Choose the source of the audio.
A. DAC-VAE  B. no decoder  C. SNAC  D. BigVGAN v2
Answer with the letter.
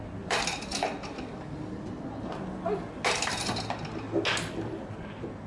B